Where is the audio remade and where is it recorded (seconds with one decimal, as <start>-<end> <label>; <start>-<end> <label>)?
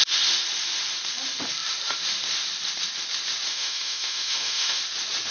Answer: 0.0-3.5 recorded; 3.5-4.8 remade; 4.8-5.3 recorded